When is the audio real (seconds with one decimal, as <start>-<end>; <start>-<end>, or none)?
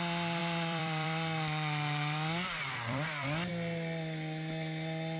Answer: 0.0-0.4; 3.5-5.2